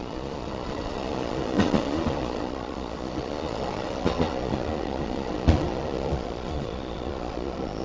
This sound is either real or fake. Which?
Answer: fake